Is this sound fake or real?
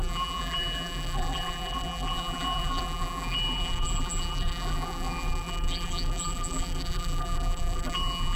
fake